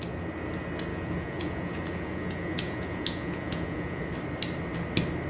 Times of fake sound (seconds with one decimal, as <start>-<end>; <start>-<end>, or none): 0.9-4.0